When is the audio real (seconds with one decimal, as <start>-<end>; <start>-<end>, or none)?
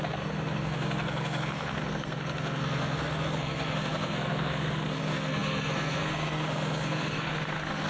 none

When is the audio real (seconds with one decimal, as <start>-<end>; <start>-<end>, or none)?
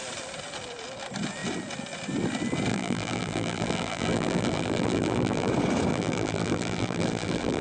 0.0-2.7; 5.5-5.9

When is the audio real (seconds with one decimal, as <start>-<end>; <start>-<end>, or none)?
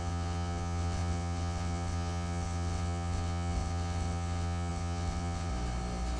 5.5-6.2